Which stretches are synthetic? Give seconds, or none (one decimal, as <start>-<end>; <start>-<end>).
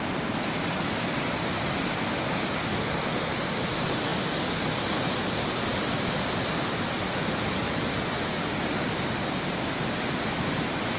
none